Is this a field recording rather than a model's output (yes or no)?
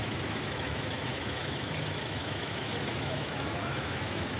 no